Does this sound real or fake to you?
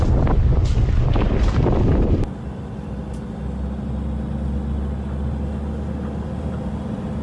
real